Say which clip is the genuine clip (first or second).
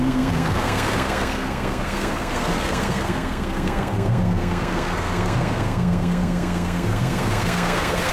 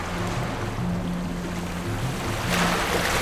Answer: second